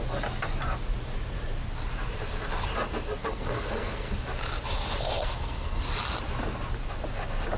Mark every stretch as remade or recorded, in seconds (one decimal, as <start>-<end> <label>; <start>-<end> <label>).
0.0-3.2 recorded; 3.2-4.1 remade; 4.1-5.2 recorded; 5.2-5.8 remade; 5.8-7.6 recorded